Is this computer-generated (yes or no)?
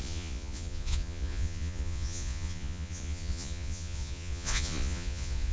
yes